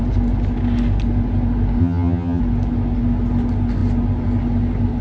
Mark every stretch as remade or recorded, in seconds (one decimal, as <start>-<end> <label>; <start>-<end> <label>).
0.0-1.8 recorded; 1.8-2.4 remade; 2.4-5.0 recorded

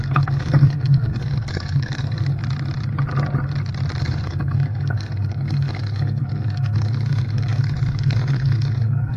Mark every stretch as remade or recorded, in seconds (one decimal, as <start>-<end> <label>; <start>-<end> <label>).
0.0-2.4 remade; 2.4-4.0 recorded; 4.0-9.2 remade

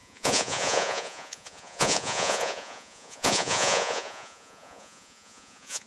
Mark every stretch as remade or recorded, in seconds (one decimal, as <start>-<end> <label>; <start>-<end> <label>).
0.0-5.9 remade

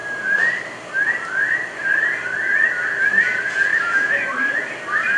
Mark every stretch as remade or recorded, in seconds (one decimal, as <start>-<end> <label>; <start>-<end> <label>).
0.0-3.7 recorded; 3.7-4.5 remade; 4.5-5.2 recorded

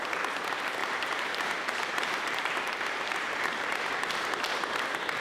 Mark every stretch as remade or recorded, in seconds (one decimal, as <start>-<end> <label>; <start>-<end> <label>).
0.0-0.8 recorded; 0.8-3.7 remade; 3.7-5.2 recorded

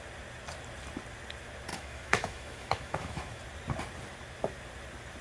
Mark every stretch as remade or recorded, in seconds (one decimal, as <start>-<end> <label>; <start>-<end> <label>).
0.0-1.7 recorded; 1.7-3.4 remade; 3.4-5.2 recorded

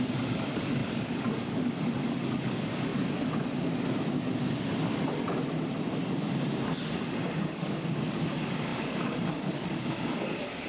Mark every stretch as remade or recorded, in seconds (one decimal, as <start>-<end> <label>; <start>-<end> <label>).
0.0-2.9 remade; 2.9-7.4 recorded; 7.4-10.7 remade